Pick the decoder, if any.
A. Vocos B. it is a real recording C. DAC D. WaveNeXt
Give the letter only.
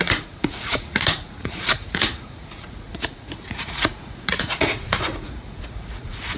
A